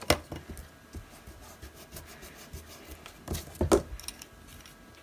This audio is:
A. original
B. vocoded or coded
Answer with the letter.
A